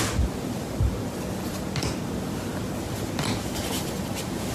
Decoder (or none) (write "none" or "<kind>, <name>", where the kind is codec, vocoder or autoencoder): none